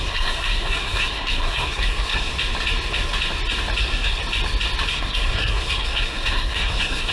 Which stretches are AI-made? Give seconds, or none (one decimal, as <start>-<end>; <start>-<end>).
0.0-2.3; 3.8-4.2; 4.9-7.1